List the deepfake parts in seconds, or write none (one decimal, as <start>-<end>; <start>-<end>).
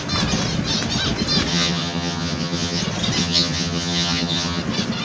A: 1.5-2.8; 3.2-4.6